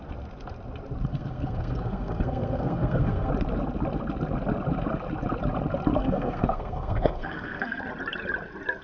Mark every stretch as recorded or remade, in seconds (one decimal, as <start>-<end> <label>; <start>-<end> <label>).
0.0-1.1 recorded; 1.1-3.3 remade; 3.3-6.0 recorded; 6.0-7.8 remade; 7.8-8.8 recorded

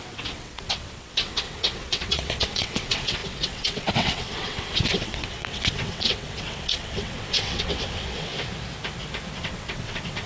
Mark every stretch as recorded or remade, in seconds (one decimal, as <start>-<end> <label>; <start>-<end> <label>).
0.0-8.3 remade; 8.3-9.4 recorded; 9.4-10.3 remade

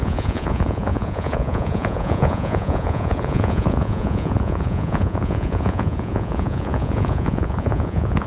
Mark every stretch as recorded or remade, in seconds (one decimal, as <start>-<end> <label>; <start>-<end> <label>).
0.0-8.3 remade

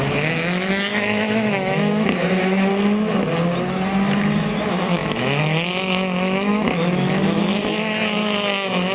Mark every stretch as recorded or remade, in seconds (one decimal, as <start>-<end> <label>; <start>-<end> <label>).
0.0-2.7 remade; 2.7-3.6 recorded; 3.6-8.9 remade

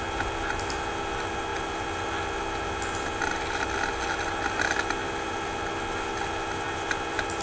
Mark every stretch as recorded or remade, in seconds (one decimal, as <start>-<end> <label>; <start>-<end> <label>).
0.0-7.4 recorded

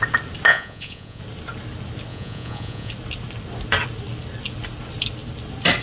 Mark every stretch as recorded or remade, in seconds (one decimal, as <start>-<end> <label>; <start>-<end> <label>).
0.0-0.5 recorded; 0.5-1.2 remade; 1.2-2.1 recorded; 2.1-2.9 remade; 2.9-5.8 recorded

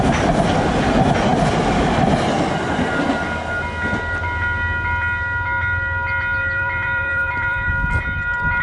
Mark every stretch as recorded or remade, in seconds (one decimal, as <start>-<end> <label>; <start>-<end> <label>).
0.0-1.3 recorded; 1.3-3.4 remade; 3.4-6.4 recorded; 6.4-7.7 remade; 7.7-8.6 recorded